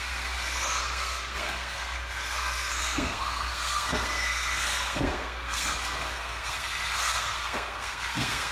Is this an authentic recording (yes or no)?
no